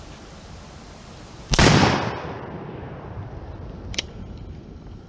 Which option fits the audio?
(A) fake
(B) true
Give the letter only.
B